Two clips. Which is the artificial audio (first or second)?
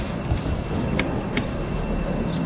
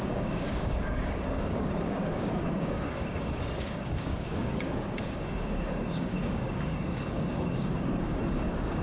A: second